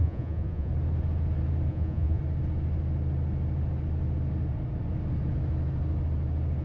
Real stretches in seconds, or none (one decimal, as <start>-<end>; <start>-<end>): 0.7-1.7; 2.2-6.6